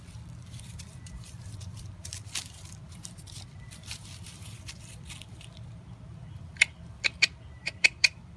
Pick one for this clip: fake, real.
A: fake